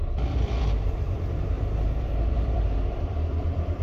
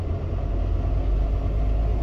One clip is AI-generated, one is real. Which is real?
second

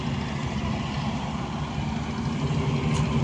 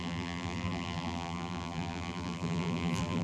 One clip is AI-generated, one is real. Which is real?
first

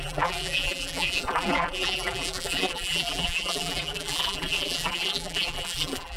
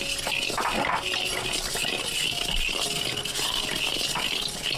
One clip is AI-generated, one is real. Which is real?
second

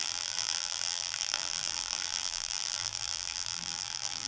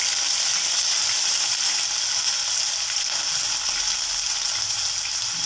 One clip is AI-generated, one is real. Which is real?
second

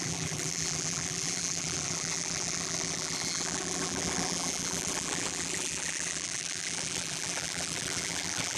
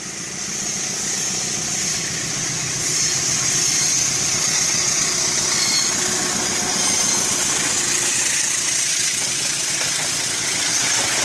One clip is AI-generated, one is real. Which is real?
second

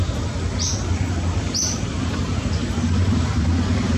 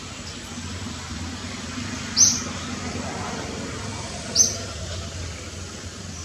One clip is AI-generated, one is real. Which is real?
second